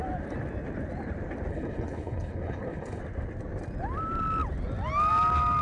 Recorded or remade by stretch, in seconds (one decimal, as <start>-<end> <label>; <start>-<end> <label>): 0.0-1.5 recorded; 1.5-3.0 remade; 3.0-5.6 recorded